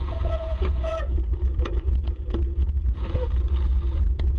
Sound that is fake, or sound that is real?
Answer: fake